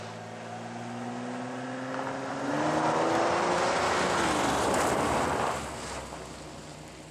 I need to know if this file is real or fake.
real